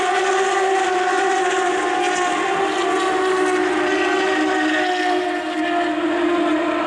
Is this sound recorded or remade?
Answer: recorded